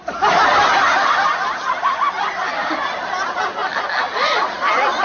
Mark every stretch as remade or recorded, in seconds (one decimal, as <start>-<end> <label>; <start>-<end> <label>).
0.0-5.0 recorded